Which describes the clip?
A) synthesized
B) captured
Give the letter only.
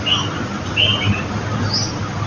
B